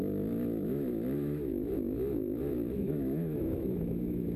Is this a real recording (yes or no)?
no